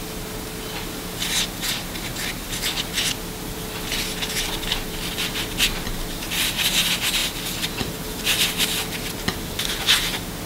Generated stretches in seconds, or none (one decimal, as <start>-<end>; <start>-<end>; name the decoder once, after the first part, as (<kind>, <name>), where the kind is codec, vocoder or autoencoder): none